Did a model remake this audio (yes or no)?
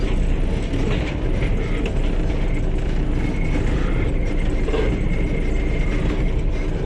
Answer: no